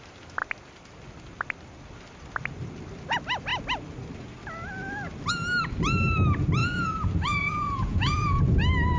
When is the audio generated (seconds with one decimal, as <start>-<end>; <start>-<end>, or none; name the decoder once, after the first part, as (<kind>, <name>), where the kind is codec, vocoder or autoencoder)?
6.6-8.4 (vocoder, Vocos)